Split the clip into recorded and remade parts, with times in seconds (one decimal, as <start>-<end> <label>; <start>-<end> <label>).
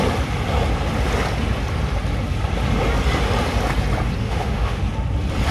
0.0-4.2 recorded; 4.2-4.8 remade; 4.8-5.5 recorded